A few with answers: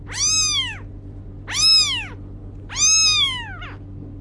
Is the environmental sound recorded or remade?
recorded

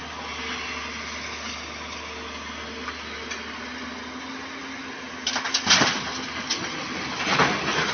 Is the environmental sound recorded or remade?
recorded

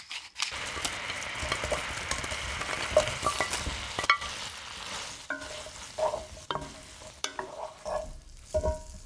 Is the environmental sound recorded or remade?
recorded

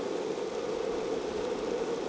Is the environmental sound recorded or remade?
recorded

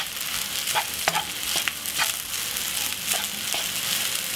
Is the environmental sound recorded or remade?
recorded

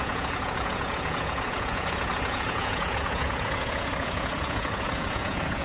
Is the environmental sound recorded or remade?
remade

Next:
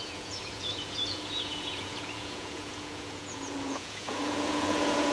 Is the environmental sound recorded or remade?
remade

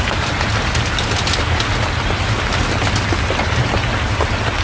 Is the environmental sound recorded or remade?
recorded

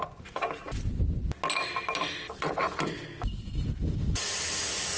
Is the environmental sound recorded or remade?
recorded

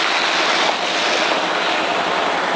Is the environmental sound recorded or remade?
recorded